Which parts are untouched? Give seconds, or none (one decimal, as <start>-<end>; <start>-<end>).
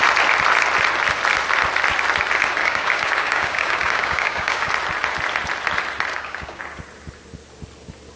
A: 0.0-2.6; 4.7-6.1; 6.6-8.2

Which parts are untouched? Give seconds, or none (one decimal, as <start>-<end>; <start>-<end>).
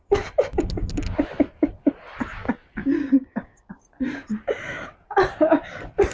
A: 0.0-2.8; 3.8-6.1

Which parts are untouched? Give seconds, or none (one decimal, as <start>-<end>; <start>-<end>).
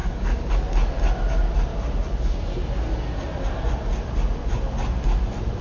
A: 0.5-5.6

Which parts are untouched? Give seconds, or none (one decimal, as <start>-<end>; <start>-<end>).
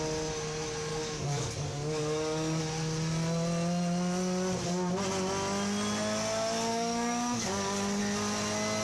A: 0.0-0.9; 2.6-6.7; 8.0-8.8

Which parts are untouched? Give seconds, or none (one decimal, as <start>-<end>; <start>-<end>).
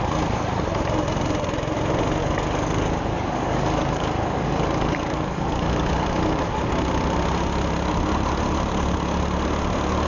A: 0.0-2.2; 6.7-10.1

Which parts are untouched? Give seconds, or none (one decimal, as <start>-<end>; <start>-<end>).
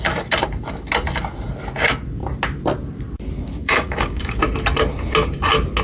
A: 0.0-3.6; 4.4-5.8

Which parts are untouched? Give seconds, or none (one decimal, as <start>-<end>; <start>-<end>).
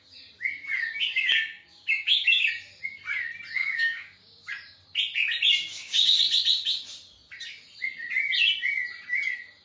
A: 0.0-0.9; 2.5-3.6; 4.5-5.7; 6.2-9.6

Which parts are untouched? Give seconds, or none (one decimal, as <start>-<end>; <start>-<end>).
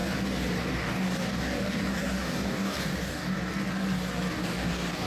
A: 0.0-0.6; 3.5-4.3